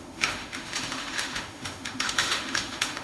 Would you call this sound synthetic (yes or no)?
yes